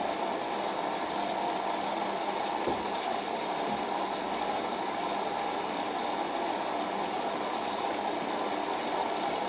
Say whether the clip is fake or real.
real